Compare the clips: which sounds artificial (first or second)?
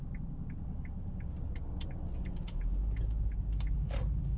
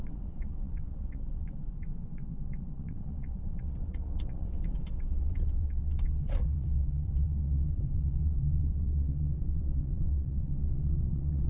second